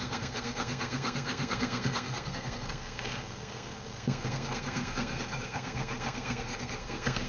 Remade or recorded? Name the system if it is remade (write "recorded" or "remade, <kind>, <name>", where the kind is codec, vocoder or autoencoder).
remade, codec, SNAC